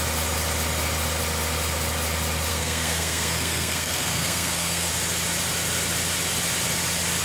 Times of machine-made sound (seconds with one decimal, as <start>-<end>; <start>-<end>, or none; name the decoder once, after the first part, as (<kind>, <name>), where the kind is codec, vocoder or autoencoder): 2.5-4.9 (codec, SNAC)